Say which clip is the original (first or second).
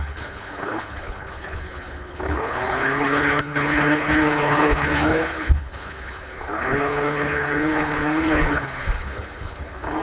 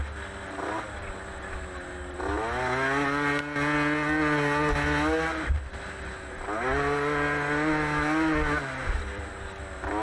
second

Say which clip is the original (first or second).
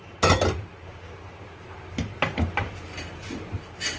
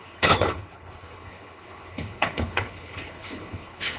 first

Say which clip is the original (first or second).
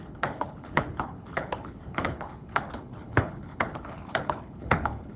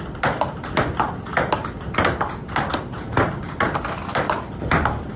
second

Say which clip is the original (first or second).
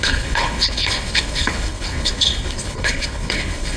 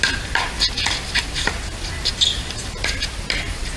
second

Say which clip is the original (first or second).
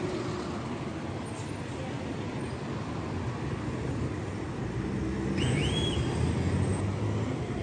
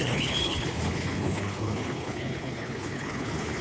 first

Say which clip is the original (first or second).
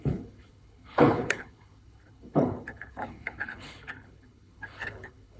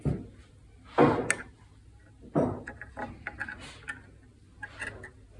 second